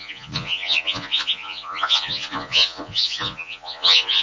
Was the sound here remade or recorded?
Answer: remade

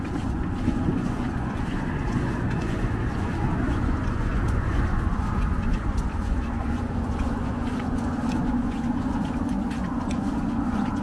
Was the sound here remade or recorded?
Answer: remade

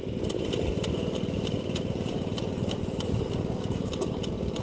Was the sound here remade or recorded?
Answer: recorded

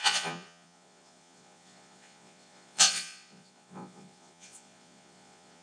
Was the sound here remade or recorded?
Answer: remade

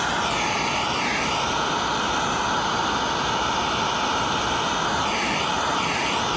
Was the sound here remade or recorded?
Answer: recorded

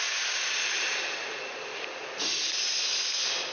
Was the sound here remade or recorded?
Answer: recorded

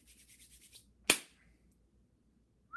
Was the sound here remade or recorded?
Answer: recorded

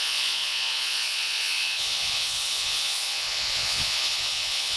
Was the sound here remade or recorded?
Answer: remade